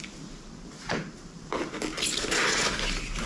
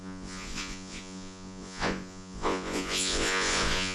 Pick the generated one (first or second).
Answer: second